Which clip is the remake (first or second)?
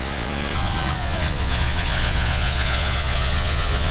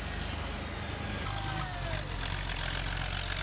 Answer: first